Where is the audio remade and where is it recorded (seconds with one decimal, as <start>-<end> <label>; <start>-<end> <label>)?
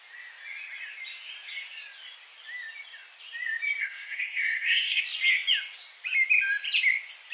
0.0-3.8 recorded; 3.8-5.0 remade; 5.0-7.3 recorded